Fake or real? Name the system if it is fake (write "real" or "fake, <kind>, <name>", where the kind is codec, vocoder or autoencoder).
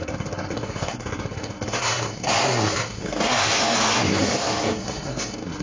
fake, codec, SNAC